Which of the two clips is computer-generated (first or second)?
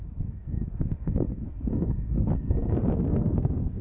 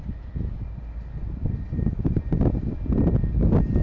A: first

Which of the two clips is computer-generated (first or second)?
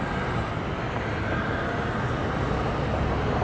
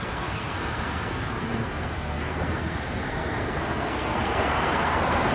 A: second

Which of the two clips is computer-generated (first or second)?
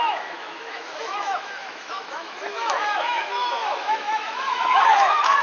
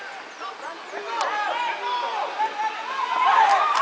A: first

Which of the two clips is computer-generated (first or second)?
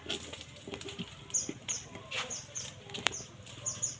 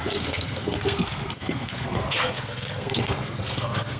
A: second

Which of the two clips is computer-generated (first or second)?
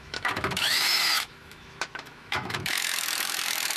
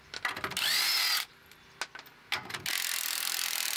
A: first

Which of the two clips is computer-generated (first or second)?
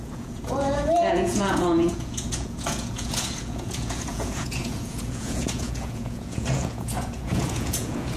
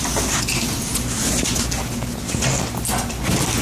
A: first